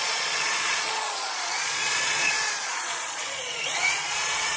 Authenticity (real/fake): fake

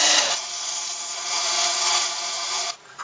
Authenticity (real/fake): fake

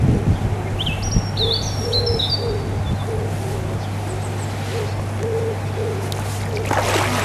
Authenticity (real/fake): real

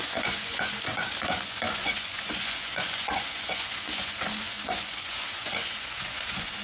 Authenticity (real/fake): fake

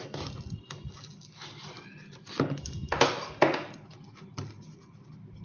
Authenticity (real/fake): real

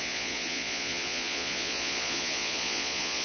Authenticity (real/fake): fake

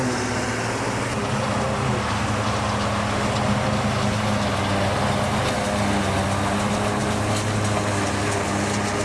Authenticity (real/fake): real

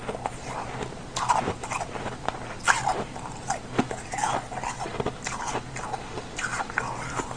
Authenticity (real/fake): real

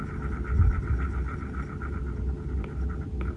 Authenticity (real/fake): real